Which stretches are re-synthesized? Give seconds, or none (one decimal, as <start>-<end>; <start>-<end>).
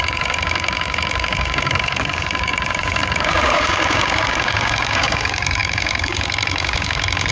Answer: 0.0-7.3